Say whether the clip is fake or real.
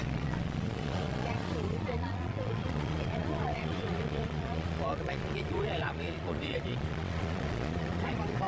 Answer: fake